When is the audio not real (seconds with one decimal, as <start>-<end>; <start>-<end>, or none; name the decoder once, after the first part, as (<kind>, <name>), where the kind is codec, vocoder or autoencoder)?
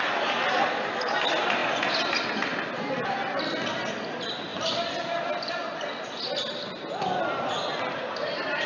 none